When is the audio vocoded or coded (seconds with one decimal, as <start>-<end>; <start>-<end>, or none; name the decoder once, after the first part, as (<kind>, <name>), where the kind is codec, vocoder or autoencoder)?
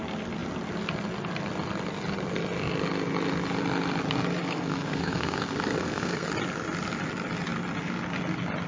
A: 4.4-6.3 (codec, SNAC)